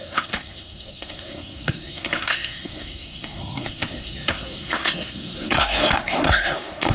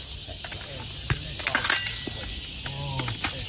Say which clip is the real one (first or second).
second